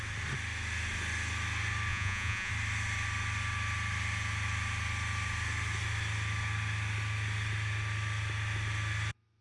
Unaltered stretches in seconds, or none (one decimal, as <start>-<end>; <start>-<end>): 0.0-1.9; 2.5-9.4